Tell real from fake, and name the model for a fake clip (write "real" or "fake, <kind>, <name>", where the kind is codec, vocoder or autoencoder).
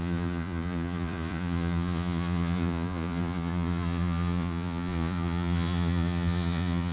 fake, vocoder, Vocos